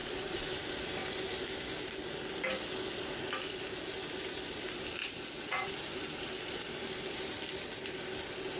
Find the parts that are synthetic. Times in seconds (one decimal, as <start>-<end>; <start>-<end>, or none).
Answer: 0.0-0.5; 5.0-5.7